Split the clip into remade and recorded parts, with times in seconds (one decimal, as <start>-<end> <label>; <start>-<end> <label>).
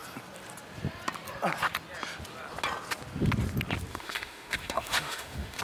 0.0-3.9 recorded; 3.9-5.6 remade